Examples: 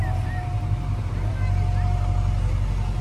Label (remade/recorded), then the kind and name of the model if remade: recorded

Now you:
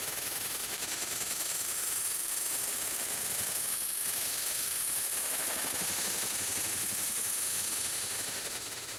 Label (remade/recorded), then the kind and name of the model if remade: remade, autoencoder, DAC-VAE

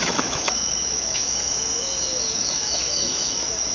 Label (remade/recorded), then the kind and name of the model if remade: remade, autoencoder, DAC-VAE